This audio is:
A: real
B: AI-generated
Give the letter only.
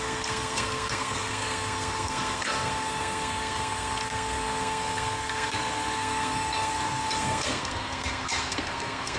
B